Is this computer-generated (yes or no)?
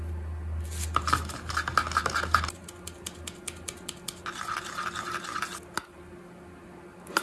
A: no